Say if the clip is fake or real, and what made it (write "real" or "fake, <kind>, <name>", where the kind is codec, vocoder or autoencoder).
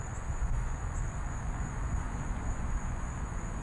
fake, vocoder, Vocos